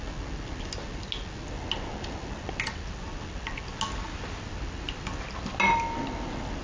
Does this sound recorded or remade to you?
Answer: recorded